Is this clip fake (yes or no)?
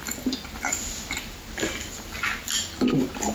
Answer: no